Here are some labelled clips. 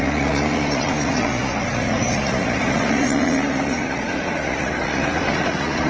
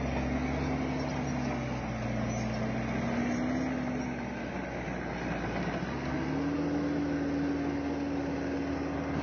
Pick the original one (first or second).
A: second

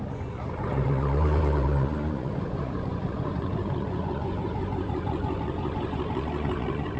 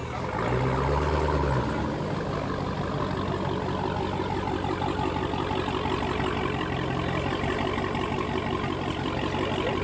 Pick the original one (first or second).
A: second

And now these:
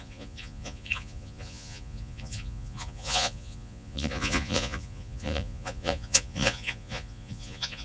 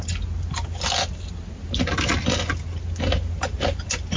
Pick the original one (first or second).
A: second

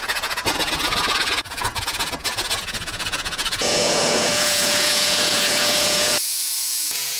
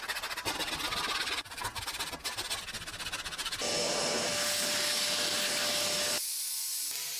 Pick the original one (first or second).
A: second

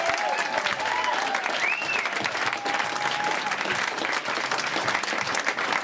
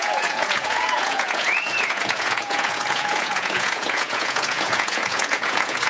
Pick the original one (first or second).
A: first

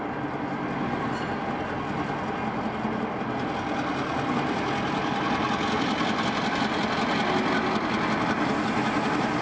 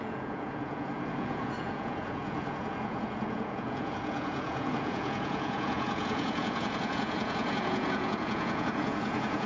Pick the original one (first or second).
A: first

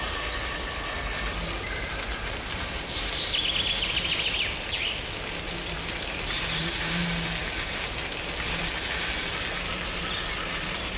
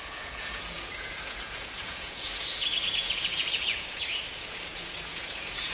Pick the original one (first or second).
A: first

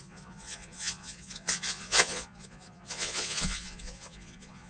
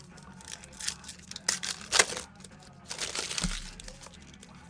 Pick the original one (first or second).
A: second